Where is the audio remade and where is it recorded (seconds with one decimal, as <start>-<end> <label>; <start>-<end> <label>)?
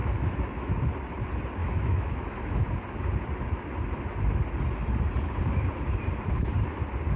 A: 0.0-0.7 remade; 0.7-1.6 recorded; 1.6-2.6 remade; 2.6-7.2 recorded